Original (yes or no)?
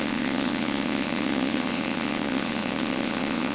no